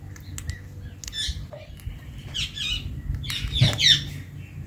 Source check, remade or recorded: recorded